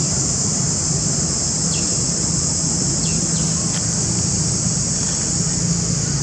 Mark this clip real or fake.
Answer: real